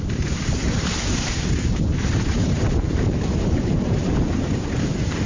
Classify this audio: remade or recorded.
remade